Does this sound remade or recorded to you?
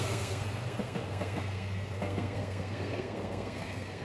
remade